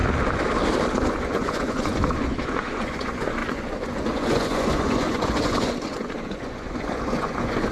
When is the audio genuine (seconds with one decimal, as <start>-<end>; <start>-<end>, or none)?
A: 0.0-1.1